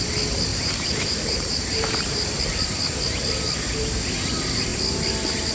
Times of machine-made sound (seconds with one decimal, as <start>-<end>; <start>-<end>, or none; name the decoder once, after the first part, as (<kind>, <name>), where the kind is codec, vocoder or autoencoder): 0.5-2.4 (vocoder, BigVGAN v2)

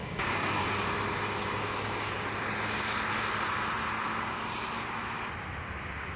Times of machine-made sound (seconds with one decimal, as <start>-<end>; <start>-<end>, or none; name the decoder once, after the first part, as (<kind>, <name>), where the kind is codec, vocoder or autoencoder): 0.0-0.5 (codec, DAC)